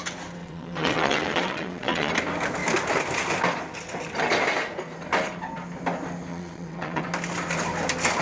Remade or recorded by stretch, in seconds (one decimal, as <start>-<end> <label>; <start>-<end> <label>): 0.0-0.4 recorded; 0.4-2.1 remade; 2.1-6.3 recorded; 6.3-7.0 remade; 7.0-8.2 recorded